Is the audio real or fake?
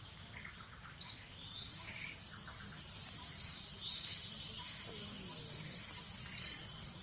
real